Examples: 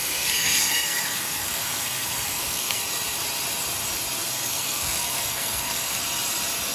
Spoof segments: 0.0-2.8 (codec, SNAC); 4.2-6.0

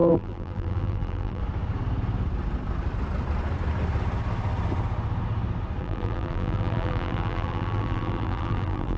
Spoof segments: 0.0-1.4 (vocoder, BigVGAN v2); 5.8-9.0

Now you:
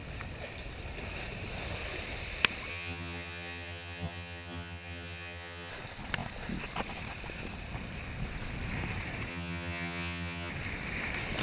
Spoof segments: 2.7-5.7 (vocoder, HiFi-GAN); 9.3-10.5

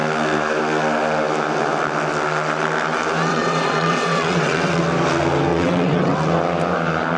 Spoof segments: 3.3-4.8 (vocoder, WaveNeXt); 5.5-6.1

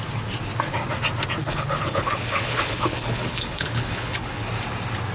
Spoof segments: 1.4-4.5 (codec, HILCodec)

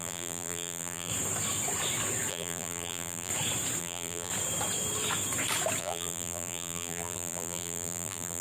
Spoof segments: 0.0-1.1 (vocoder, BigVGAN v2); 2.3-3.3; 3.8-4.3; 5.8-8.4

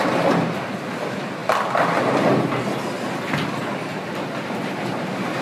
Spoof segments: none